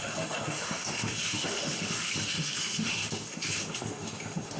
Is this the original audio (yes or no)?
no